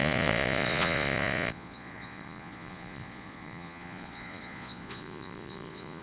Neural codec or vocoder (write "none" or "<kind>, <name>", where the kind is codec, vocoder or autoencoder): vocoder, Vocos